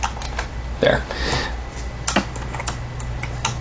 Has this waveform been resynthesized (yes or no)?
no